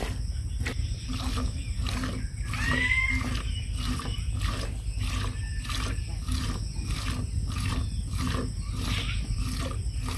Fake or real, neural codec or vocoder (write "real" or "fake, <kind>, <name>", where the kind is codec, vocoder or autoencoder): real